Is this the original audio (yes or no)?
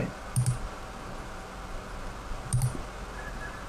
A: yes